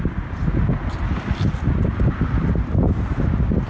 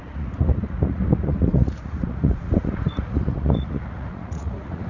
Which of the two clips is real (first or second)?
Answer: first